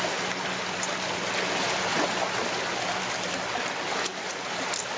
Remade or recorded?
recorded